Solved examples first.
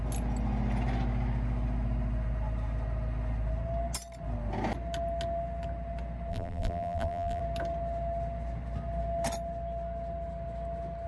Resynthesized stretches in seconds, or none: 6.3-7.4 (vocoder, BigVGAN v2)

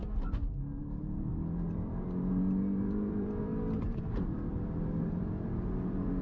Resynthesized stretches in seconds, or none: 0.8-6.2 (vocoder, BigVGAN v2)

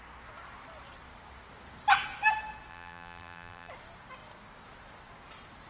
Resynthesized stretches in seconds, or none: 2.7-3.7 (vocoder, BigVGAN v2)

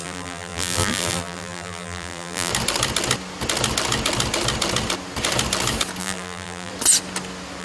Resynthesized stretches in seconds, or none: 0.0-2.5 (vocoder, BigVGAN v2); 6.0-6.7

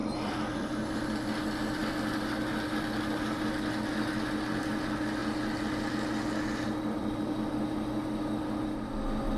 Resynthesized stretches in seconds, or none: 0.0-1.0 (vocoder, BigVGAN v2); 7.0-7.6

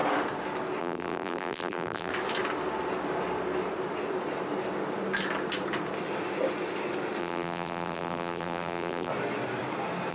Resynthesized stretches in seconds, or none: 0.8-2.1 (vocoder, BigVGAN v2); 7.2-9.1

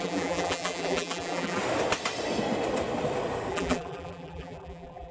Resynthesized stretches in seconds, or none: 0.0-1.6 (vocoder, BigVGAN v2); 3.5-5.1